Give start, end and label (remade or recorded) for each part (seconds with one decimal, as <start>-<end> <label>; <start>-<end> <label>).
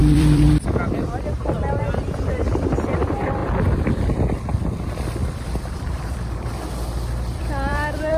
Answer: 0.0-0.5 remade; 0.5-5.2 recorded; 5.2-8.2 remade